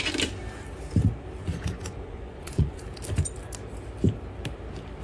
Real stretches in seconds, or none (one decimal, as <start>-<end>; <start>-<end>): 0.0-1.5; 2.8-5.0